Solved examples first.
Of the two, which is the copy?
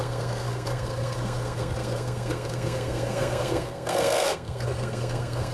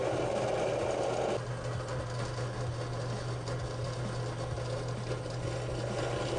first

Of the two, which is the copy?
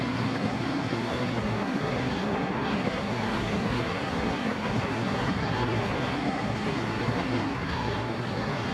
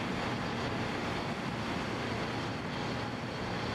first